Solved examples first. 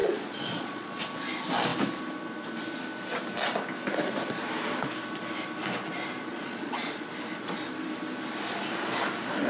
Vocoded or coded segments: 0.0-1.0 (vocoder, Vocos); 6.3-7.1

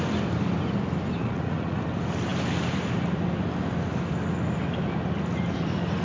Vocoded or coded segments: 1.2-1.8 (vocoder, Vocos)

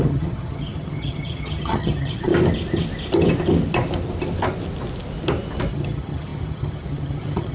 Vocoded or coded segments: 0.0-2.3 (vocoder, HiFi-GAN); 5.7-7.5

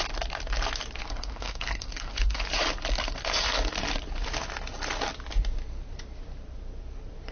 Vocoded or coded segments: 1.0-2.4 (codec, SNAC)

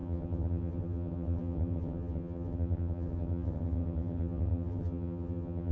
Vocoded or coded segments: 0.0-5.7 (vocoder, HiFi-GAN)

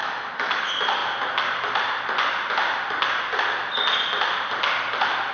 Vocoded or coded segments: 0.0-0.6 (autoencoder, DAC-VAE)

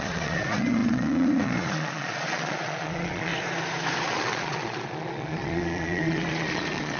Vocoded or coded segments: 0.0-3.3 (vocoder, Vocos); 4.0-7.0